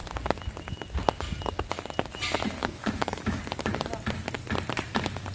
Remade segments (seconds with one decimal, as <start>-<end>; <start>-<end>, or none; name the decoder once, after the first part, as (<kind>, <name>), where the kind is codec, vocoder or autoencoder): 2.6-3.4 (autoencoder, DAC-VAE)